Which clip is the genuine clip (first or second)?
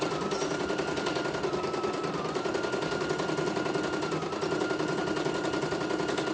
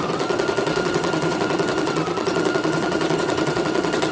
first